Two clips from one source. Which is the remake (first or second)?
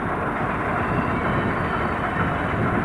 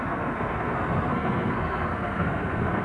second